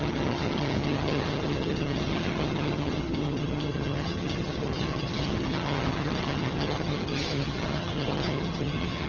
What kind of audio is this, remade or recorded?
remade